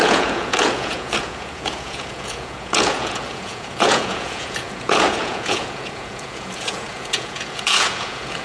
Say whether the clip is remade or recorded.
remade